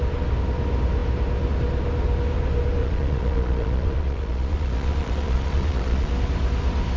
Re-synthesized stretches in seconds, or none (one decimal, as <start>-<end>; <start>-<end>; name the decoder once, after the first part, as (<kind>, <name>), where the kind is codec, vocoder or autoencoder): 2.8-6.1 (vocoder, Vocos)